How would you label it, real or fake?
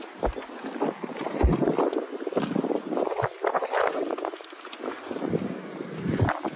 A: real